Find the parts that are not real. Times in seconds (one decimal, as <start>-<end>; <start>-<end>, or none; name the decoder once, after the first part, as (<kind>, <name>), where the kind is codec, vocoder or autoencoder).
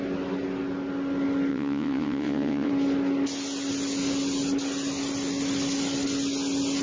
1.5-2.7 (vocoder, WaveNeXt)